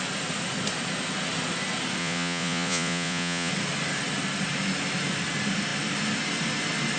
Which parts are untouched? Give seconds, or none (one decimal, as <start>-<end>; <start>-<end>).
0.0-2.0; 3.5-7.0